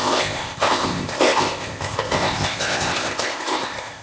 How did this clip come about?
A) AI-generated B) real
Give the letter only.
A